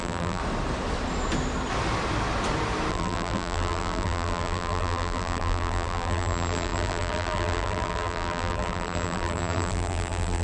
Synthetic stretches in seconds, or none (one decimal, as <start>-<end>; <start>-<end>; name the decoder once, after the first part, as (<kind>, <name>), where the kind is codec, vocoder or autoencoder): 0.0-0.4 (vocoder, BigVGAN v2); 2.9-10.4